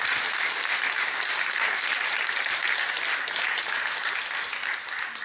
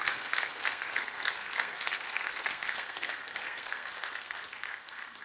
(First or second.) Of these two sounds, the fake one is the second